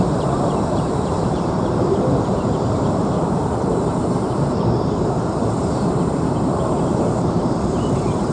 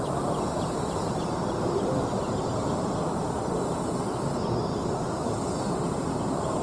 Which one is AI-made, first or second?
first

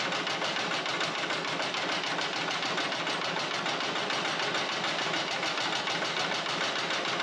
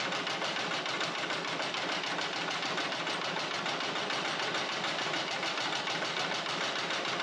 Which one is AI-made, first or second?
second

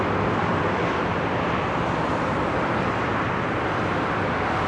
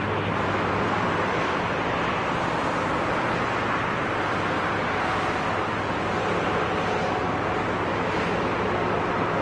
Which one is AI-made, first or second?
first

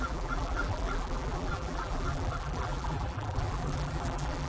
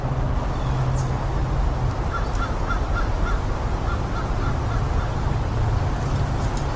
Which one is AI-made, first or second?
first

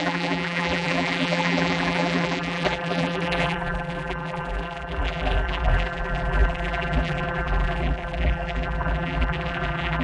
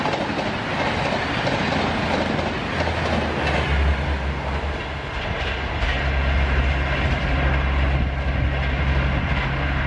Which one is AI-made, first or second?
first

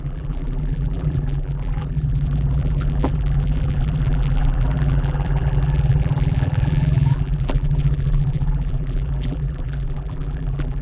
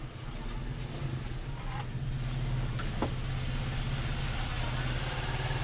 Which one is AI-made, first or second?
first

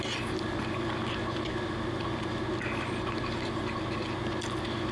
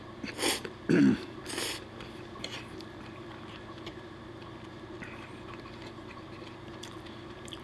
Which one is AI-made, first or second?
second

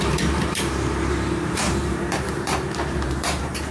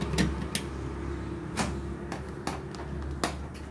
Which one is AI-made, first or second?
first